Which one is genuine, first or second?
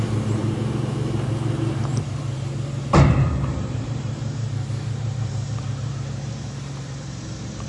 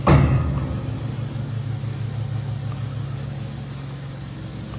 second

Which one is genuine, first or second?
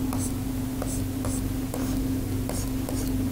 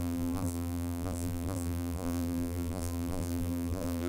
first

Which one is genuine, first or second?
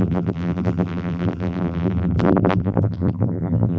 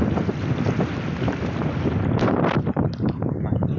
second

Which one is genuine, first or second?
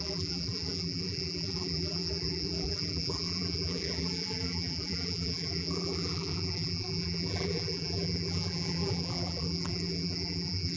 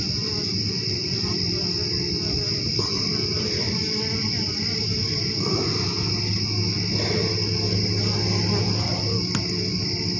second